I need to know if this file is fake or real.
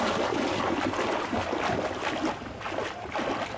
real